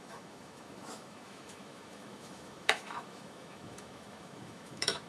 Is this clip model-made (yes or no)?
yes